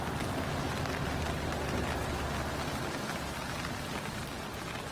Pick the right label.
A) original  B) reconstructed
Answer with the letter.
A